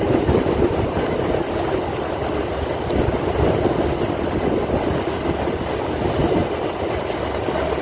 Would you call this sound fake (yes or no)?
no